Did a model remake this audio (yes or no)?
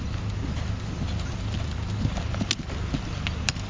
no